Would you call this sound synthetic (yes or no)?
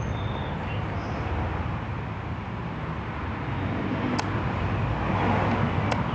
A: no